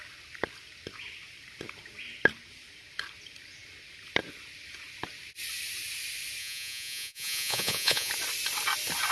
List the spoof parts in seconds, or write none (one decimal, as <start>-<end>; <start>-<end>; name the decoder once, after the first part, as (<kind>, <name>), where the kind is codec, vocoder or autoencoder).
6.4-8.1 (vocoder, Vocos)